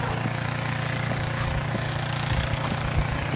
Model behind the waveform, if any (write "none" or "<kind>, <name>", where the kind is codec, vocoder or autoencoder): none